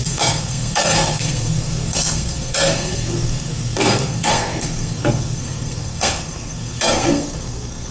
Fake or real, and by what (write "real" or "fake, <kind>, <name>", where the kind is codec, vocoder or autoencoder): fake, codec, SNAC